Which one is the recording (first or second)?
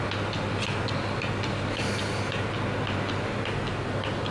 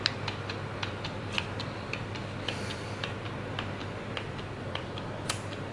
first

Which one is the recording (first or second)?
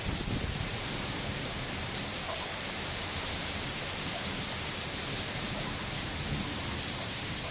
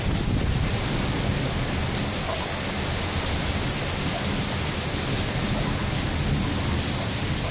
second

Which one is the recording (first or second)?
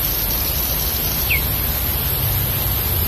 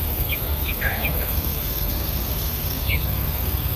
first